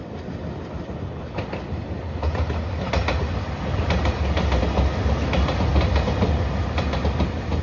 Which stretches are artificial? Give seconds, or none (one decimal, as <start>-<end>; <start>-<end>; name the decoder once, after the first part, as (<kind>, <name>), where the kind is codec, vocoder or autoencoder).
none